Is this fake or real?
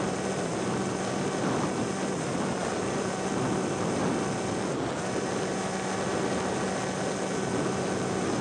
real